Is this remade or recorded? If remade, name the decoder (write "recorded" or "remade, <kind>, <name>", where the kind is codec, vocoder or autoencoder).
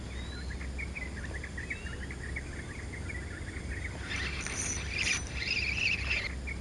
recorded